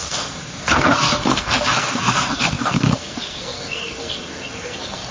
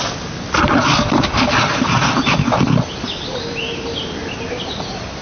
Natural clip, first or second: second